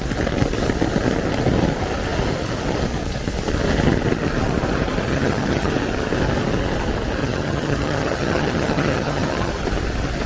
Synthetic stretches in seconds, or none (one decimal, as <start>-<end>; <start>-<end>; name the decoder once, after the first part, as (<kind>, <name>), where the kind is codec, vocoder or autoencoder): 5.1-5.7 (vocoder, HiFi-GAN); 7.2-9.5